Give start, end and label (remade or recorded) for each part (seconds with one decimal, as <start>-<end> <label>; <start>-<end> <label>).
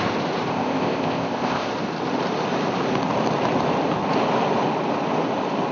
0.0-0.5 recorded; 0.5-1.7 remade; 1.7-5.7 recorded